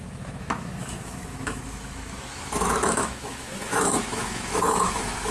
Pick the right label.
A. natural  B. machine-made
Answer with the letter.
B